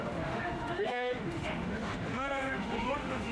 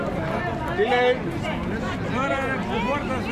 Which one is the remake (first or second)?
first